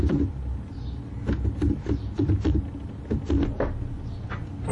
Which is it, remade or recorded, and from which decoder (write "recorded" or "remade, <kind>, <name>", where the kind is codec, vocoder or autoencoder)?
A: recorded